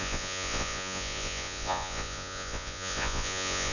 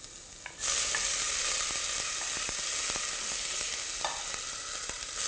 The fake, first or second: first